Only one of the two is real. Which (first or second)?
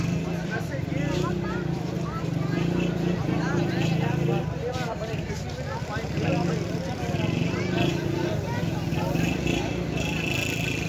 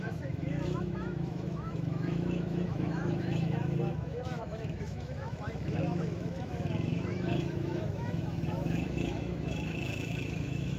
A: first